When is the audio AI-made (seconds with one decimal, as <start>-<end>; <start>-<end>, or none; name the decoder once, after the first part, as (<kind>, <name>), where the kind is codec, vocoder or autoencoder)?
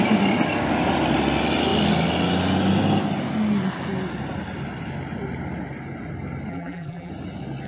6.5-7.1 (vocoder, BigVGAN v2)